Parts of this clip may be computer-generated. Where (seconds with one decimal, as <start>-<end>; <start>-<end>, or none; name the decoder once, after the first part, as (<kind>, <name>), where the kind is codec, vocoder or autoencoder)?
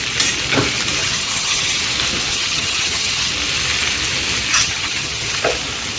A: 1.0-1.8 (vocoder, HiFi-GAN); 2.3-3.3; 4.5-5.4